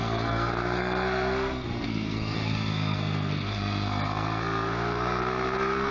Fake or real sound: fake